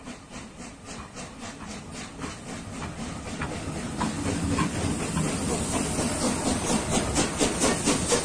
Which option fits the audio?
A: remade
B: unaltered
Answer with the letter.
B